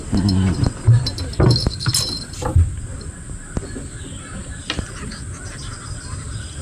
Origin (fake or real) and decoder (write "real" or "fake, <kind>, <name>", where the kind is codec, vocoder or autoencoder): real